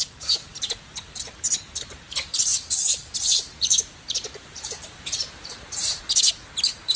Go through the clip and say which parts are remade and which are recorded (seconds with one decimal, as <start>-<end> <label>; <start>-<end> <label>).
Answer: 0.0-0.5 recorded; 0.5-1.0 remade; 1.0-2.5 recorded; 2.5-6.0 remade; 6.0-7.0 recorded